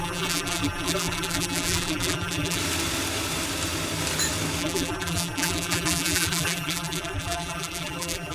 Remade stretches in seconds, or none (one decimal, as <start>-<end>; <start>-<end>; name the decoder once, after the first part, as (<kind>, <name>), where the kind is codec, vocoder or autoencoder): 0.0-2.6 (vocoder, BigVGAN v2); 4.6-8.3